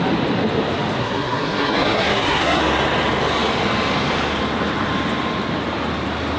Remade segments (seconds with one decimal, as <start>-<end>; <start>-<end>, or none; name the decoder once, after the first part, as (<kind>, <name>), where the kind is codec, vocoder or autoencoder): 1.0-2.6 (codec, SNAC)